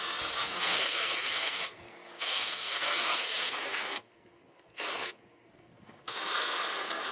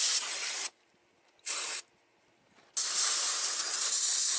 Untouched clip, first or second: second